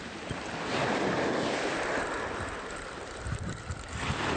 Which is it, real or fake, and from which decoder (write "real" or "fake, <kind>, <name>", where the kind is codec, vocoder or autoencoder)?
real